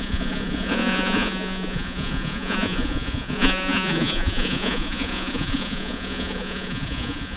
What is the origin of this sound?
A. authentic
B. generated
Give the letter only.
B